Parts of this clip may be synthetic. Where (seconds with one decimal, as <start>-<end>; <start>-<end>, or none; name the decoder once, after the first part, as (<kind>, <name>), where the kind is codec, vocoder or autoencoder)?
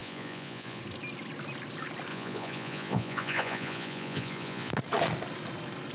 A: 0.0-0.8 (vocoder, Vocos); 2.1-4.7